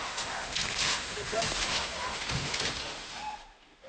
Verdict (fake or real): fake